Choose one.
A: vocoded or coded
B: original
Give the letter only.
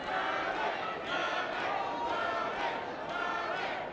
B